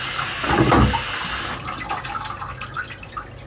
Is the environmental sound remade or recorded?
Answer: recorded